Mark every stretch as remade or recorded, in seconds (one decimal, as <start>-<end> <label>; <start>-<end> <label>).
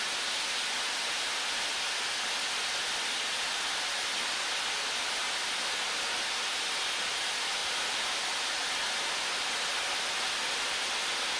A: 0.0-7.6 recorded; 7.6-8.3 remade; 8.3-11.4 recorded